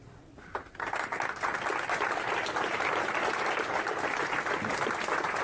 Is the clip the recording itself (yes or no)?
yes